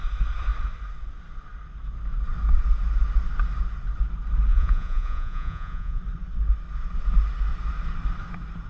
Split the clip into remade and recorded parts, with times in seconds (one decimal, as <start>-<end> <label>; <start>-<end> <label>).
0.0-4.5 recorded; 4.5-6.0 remade; 6.0-8.7 recorded